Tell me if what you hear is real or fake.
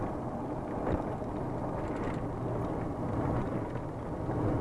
real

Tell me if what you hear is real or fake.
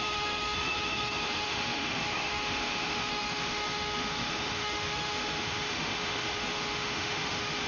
fake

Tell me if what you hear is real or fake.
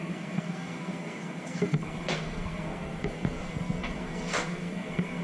fake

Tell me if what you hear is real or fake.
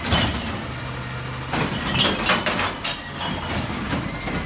real